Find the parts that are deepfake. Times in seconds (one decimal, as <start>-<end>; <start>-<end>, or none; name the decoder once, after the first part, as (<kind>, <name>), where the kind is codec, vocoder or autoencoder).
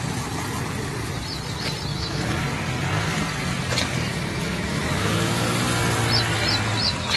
1.9-2.4 (autoencoder, DAC-VAE); 4.1-5.6